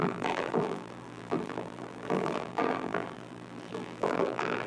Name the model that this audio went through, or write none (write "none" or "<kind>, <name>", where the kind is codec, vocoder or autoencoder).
vocoder, BigVGAN v2